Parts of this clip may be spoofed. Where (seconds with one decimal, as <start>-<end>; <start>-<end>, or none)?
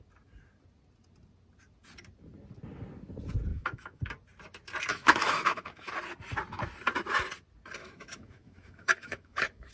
3.5-4.0; 4.9-5.9; 7.8-9.7